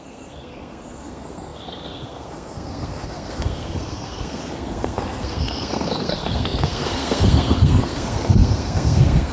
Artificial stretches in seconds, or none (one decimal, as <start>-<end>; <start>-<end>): 0.0-9.3